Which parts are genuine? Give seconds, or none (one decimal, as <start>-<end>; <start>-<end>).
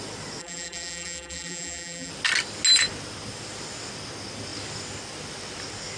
0.0-0.4; 2.1-6.0